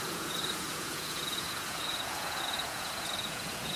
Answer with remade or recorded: remade